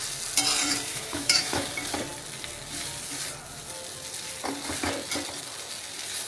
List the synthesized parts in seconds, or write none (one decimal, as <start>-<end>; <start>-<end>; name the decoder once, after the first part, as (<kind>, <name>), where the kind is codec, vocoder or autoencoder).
0.9-1.7 (autoencoder, DAC-VAE)